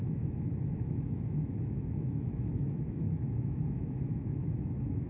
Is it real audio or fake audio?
fake